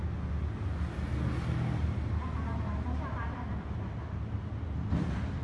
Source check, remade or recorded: recorded